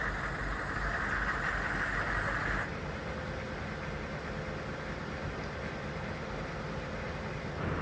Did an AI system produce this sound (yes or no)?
no